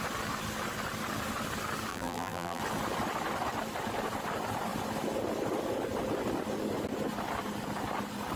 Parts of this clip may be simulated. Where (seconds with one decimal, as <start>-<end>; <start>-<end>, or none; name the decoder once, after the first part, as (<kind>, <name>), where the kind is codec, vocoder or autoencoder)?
1.9-2.6 (vocoder, BigVGAN v2)